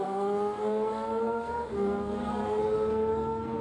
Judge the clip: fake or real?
fake